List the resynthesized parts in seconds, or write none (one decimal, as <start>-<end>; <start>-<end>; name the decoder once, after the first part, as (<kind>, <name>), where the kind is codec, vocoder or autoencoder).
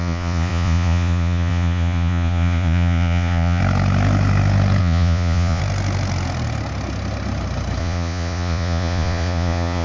0.0-3.6 (vocoder, Vocos); 4.8-5.6; 7.8-9.8